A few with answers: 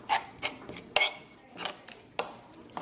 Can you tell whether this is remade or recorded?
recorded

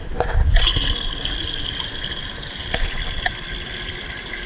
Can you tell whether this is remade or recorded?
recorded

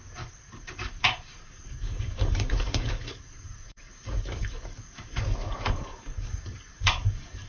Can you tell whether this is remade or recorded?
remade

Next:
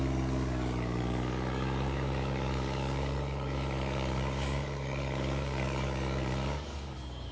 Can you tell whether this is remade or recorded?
remade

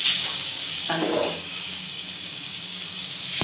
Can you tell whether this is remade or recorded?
remade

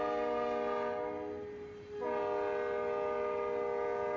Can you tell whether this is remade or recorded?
recorded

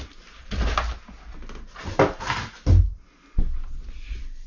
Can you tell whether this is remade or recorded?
recorded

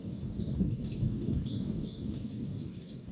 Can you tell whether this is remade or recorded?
remade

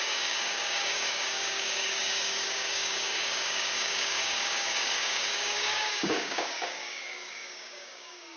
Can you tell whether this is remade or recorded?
remade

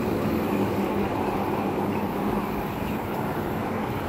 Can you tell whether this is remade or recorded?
remade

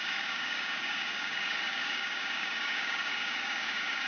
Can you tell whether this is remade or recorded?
remade